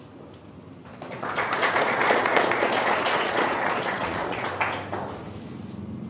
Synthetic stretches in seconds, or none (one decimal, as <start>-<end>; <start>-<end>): 0.9-4.5